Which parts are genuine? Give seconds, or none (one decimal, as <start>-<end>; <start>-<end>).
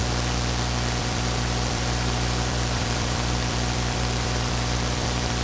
0.0-1.0